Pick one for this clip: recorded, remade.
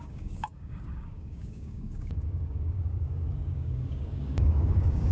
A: remade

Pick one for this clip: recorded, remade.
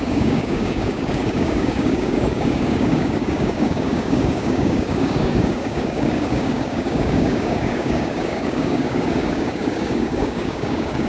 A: remade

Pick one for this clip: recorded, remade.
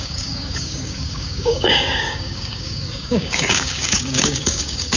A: remade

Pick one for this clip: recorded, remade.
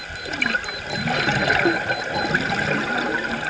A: recorded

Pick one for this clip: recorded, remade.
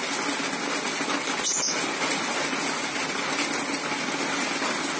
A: recorded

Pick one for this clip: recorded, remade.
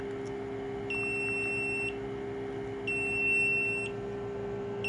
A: recorded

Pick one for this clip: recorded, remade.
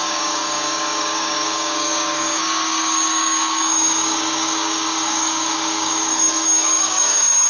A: remade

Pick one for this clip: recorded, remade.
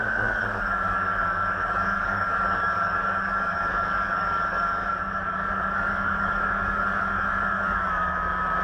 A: remade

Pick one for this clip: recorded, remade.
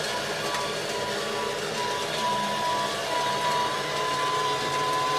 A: recorded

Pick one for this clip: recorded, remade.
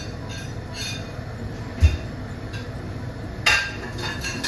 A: recorded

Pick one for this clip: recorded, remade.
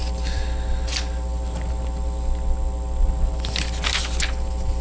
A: recorded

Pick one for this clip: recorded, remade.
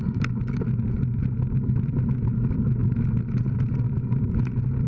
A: recorded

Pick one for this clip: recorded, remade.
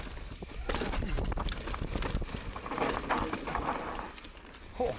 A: recorded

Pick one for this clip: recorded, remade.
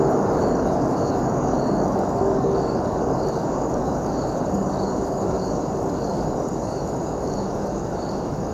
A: remade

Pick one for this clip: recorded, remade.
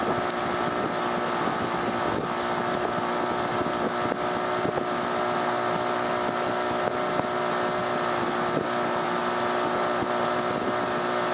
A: recorded